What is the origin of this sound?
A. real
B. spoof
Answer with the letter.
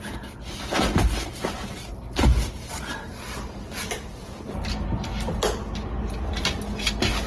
A